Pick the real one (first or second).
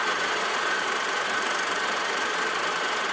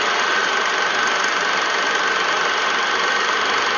second